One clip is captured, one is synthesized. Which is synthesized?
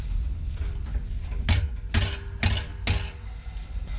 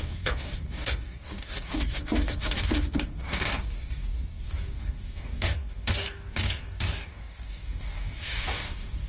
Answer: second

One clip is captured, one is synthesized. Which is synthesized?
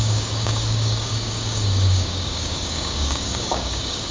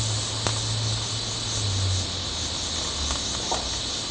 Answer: first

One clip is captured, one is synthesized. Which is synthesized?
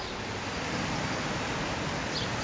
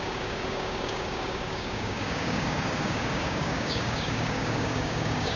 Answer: second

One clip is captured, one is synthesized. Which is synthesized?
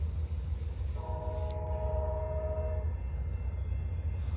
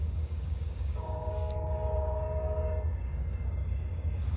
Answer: second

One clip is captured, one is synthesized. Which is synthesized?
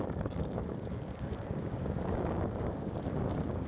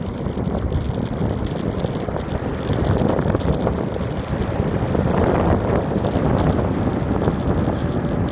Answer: first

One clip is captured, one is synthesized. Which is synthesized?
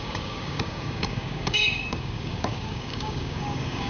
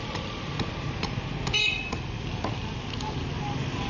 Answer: first